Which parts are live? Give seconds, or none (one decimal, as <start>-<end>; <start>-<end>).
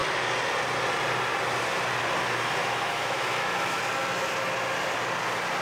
0.0-2.6; 3.8-5.6